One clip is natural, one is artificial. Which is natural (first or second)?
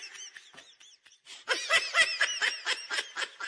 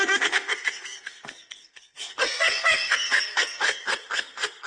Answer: first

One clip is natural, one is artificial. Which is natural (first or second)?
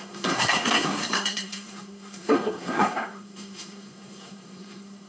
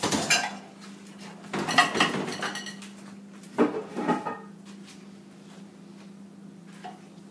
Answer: second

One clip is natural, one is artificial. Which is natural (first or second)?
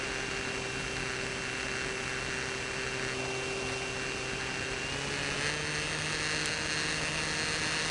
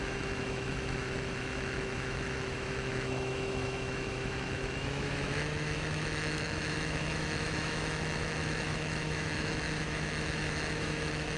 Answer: first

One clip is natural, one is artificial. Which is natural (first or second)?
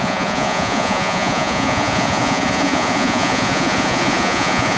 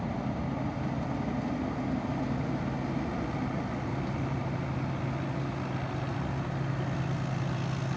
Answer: second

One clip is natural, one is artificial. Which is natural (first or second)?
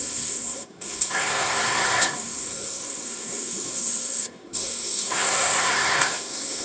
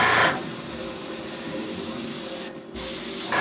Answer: second